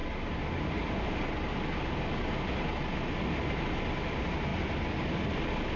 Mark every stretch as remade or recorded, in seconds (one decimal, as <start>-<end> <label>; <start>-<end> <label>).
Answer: 0.0-5.8 recorded